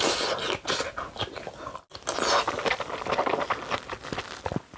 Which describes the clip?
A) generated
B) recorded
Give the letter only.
B